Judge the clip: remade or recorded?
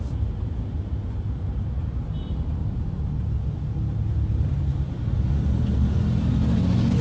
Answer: recorded